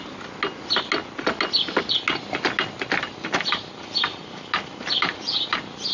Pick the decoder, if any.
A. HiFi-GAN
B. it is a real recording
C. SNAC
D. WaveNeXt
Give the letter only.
B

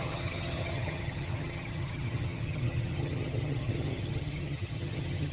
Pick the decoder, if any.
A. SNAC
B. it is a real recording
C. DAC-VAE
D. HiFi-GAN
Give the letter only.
D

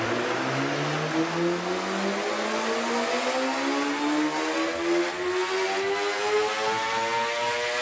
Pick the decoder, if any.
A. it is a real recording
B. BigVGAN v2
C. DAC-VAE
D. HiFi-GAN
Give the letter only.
A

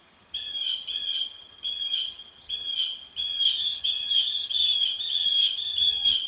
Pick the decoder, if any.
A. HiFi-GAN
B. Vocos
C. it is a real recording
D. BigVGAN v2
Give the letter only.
A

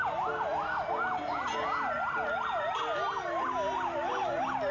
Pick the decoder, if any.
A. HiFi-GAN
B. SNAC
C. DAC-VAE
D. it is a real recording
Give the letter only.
D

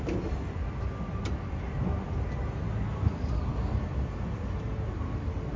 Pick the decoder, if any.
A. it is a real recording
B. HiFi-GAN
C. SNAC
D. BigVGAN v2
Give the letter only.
A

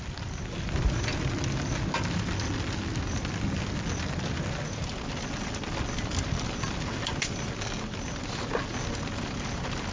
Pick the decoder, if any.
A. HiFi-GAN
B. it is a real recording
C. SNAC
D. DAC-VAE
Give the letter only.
B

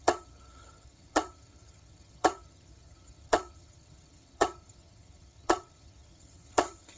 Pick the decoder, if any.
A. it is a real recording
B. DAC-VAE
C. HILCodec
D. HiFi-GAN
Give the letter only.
D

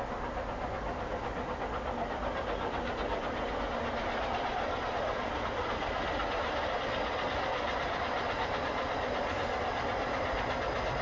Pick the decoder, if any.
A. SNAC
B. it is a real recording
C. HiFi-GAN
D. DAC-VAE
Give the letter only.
B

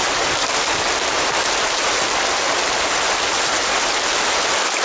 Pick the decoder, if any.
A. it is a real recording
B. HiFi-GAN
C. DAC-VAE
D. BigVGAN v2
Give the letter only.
A